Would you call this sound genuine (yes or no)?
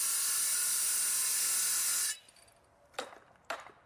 yes